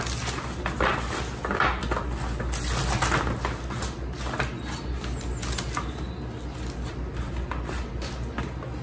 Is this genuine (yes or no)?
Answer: yes